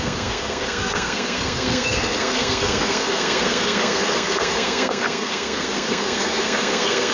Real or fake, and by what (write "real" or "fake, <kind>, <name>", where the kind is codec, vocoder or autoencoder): fake, codec, SNAC